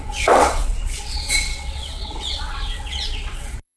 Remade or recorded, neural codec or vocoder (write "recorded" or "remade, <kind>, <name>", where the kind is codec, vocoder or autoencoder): remade, vocoder, WaveNeXt